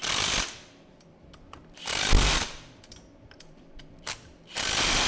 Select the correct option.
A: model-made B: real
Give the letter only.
A